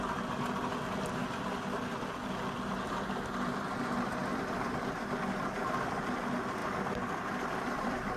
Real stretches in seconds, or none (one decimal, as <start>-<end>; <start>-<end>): 0.0-6.6